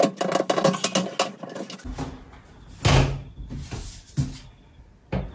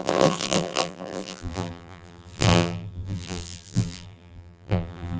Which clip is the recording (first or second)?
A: first